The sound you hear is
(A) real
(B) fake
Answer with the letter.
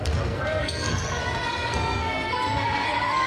B